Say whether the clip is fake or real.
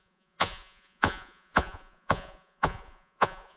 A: fake